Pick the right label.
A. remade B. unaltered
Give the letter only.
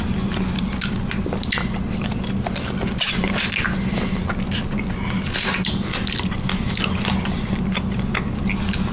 B